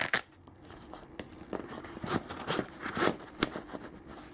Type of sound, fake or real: real